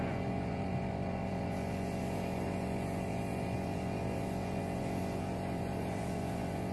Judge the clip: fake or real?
fake